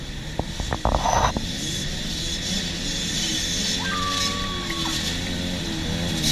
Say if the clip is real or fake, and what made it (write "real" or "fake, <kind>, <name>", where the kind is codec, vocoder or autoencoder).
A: real